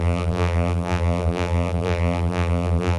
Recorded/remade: remade